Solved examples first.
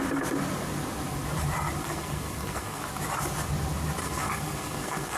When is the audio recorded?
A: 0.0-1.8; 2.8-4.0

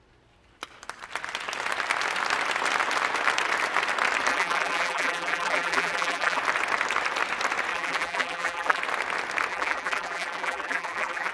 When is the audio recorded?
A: 0.0-4.3; 6.4-7.7; 8.8-9.5

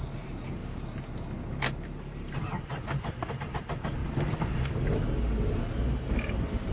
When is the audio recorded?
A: 0.6-1.5; 4.0-5.6

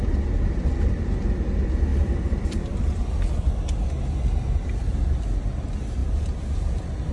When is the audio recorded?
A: 0.0-1.9; 3.5-7.1

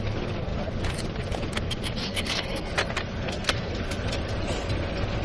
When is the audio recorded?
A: 0.0-2.0; 2.7-3.2; 3.7-5.2

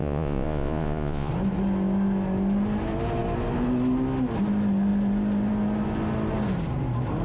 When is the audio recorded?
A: 1.3-7.2